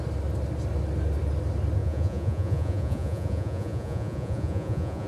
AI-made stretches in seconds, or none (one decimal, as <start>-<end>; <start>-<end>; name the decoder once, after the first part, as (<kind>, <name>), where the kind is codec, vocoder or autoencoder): 1.8-5.1 (vocoder, Vocos)